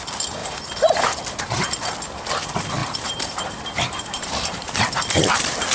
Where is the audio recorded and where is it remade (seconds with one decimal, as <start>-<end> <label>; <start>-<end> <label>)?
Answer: 0.0-2.8 recorded; 2.8-4.7 remade; 4.7-5.7 recorded